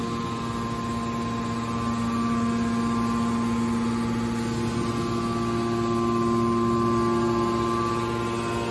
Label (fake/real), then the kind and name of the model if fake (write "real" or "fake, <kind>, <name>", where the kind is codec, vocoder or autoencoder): real